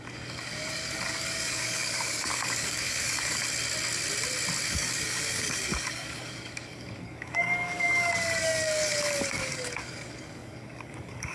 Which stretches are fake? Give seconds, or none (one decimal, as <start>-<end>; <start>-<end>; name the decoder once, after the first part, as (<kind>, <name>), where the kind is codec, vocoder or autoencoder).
0.0-3.4 (codec, DAC); 4.7-11.3